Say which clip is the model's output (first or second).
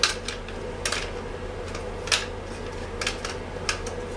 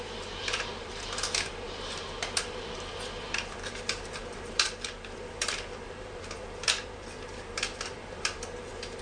second